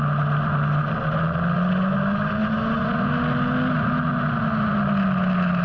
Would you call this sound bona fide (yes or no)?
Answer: yes